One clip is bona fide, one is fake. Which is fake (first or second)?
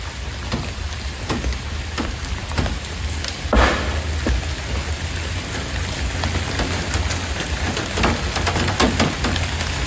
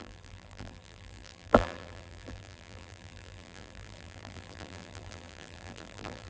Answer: second